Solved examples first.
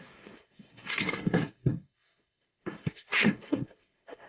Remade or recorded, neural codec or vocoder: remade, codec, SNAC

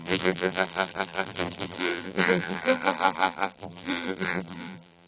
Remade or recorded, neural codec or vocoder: remade, vocoder, BigVGAN v2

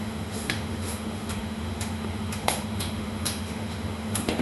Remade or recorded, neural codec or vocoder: remade, autoencoder, DAC-VAE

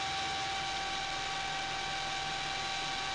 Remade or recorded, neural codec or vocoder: recorded